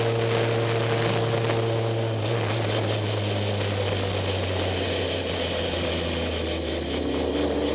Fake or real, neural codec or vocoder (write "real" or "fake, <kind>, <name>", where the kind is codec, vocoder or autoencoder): real